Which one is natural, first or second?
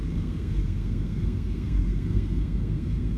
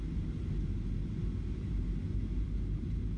second